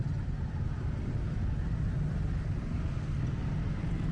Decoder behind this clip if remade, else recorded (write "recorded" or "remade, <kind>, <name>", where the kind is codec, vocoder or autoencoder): recorded